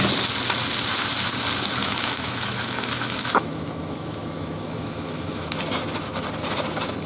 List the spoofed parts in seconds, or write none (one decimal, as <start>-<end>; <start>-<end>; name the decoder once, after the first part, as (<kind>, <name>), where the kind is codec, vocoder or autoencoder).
1.8-5.6 (autoencoder, DAC-VAE)